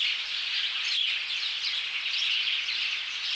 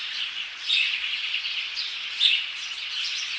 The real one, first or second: first